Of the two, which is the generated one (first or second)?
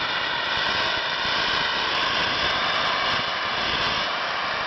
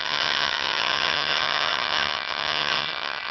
second